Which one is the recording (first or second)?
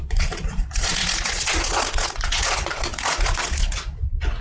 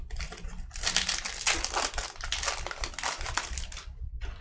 second